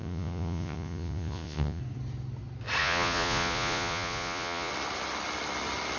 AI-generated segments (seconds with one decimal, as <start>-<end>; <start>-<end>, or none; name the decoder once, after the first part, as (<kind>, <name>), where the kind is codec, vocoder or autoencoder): 0.0-1.8 (vocoder, Vocos); 2.8-4.7